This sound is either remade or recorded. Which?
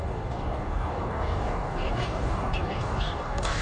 remade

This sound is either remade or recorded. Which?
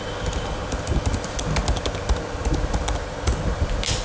recorded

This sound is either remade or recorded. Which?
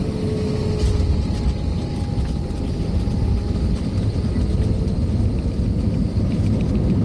recorded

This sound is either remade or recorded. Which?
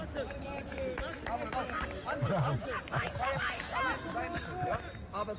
recorded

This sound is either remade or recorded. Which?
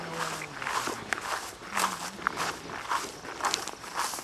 recorded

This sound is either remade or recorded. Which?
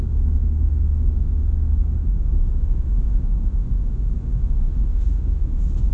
remade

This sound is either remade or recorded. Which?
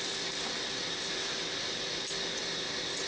recorded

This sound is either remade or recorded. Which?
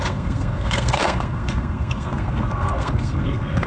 remade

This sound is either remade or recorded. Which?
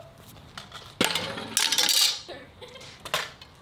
recorded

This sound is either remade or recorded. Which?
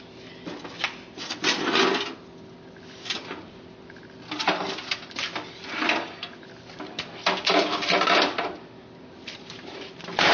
recorded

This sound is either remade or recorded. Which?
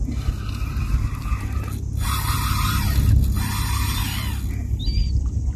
recorded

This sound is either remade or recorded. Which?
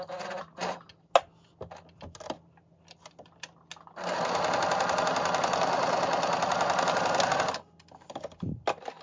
recorded